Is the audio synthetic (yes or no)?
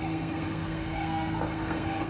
yes